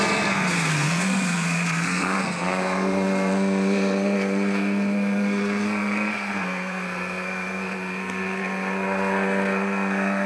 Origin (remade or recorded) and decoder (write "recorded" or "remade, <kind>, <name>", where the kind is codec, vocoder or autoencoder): remade, codec, SNAC